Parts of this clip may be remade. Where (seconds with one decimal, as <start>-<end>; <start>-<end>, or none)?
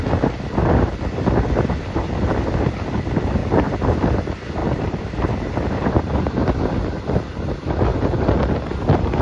3.4-4.0; 4.6-5.7